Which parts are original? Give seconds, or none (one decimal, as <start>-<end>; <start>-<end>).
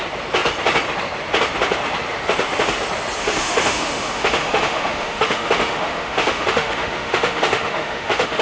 0.0-3.2